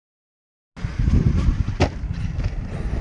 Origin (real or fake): real